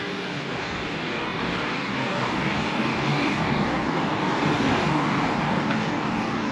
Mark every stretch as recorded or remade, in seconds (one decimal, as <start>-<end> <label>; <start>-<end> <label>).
0.0-6.5 remade